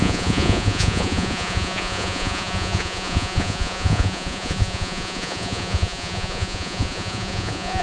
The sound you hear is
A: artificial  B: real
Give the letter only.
A